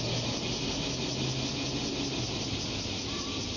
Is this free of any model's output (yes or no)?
yes